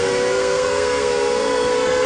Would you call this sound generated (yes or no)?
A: yes